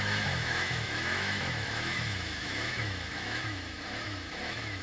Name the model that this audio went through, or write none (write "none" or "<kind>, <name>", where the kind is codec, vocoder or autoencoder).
autoencoder, DAC-VAE